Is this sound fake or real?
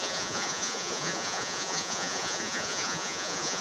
fake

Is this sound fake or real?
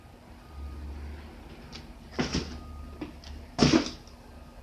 real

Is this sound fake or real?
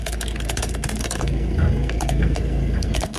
fake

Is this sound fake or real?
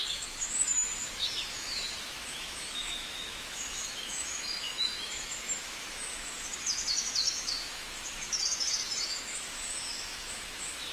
fake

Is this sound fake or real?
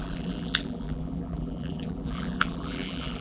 fake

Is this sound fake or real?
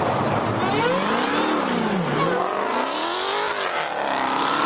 real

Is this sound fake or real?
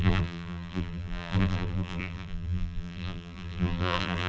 fake